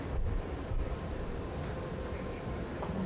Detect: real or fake real